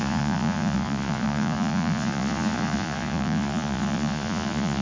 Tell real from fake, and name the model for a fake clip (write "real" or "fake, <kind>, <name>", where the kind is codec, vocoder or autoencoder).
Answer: fake, vocoder, Vocos